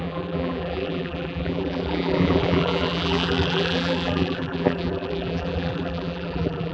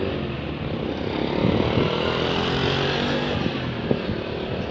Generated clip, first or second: first